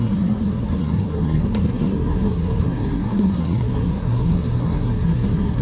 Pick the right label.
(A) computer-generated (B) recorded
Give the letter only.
A